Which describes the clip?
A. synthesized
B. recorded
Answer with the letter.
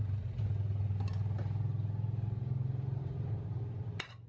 B